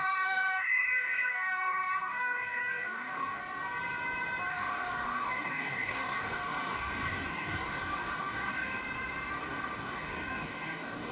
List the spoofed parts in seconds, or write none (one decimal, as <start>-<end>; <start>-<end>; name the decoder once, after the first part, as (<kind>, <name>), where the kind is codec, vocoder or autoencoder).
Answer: 0.0-3.4 (codec, DAC); 4.5-8.8; 9.4-11.1